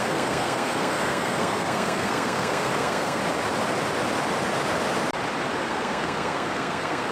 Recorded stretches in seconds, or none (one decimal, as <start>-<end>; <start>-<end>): 3.2-5.6